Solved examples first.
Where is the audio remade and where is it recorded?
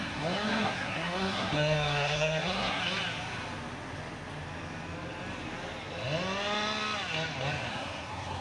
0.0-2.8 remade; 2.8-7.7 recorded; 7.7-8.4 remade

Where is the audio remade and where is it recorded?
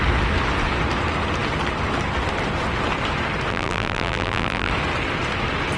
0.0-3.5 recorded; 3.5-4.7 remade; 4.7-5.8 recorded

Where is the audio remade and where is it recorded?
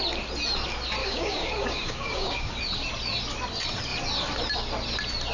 0.0-1.0 recorded; 1.0-2.5 remade; 2.5-5.3 recorded